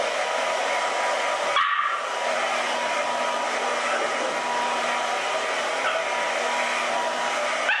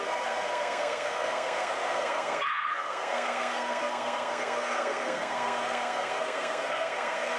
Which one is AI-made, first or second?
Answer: second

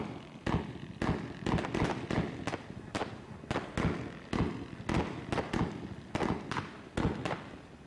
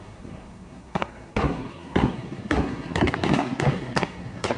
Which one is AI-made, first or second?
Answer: second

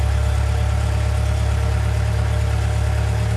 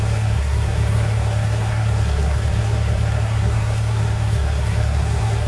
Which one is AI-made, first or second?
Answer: second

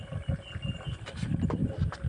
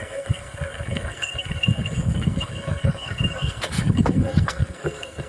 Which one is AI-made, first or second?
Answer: second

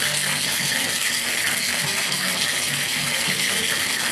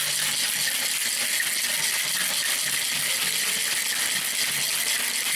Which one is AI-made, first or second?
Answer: first